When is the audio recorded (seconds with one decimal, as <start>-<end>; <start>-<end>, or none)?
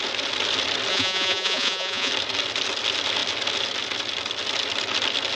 0.0-0.9; 2.1-5.4